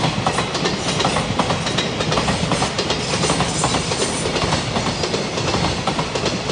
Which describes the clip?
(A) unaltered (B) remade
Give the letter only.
A